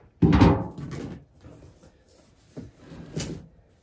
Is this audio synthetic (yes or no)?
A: no